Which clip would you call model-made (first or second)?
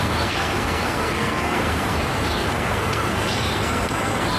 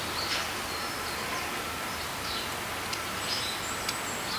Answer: first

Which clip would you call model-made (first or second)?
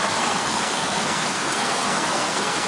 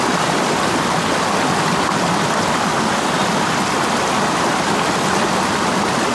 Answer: first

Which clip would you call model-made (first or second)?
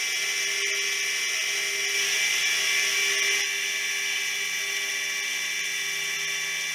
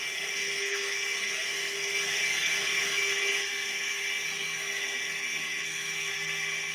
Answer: second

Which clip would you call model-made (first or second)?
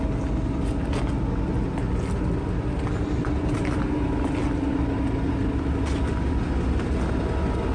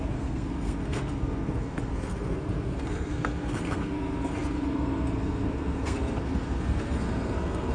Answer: second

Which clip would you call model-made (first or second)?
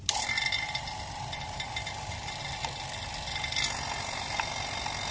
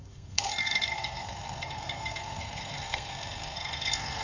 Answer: second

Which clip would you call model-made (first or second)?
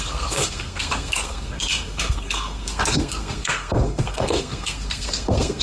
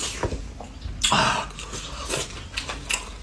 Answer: first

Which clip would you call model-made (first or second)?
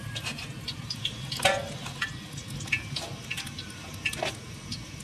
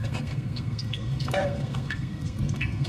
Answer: second